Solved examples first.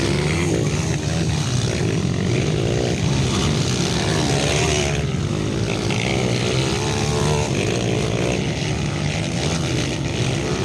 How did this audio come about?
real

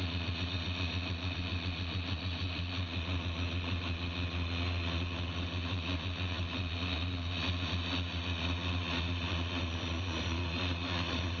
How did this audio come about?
fake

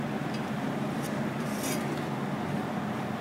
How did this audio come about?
real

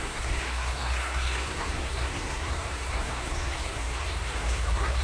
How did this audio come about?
fake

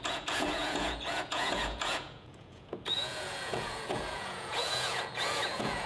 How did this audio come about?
fake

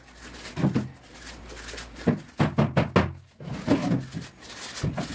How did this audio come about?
real